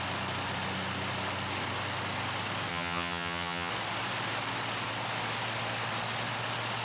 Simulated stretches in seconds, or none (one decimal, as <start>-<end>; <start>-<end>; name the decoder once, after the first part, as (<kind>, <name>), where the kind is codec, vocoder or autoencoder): 2.7-3.7 (vocoder, HiFi-GAN)